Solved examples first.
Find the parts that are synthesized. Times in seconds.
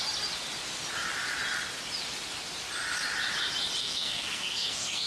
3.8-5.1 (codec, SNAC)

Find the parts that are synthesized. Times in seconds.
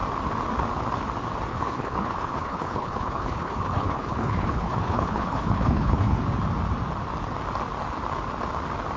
1.5-6.2 (codec, HILCodec)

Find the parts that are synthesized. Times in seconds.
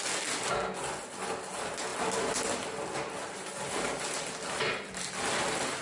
none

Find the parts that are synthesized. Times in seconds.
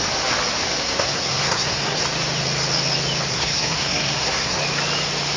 0.8-2.0 (codec, SNAC); 3.3-4.6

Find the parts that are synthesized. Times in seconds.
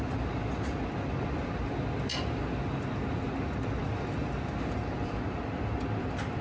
none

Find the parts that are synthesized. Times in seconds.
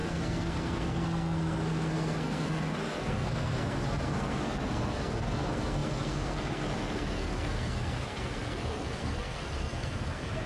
0.0-10.5 (codec, SNAC)